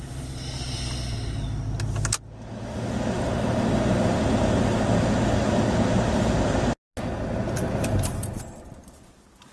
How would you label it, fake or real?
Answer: real